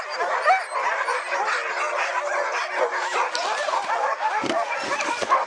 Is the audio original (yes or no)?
yes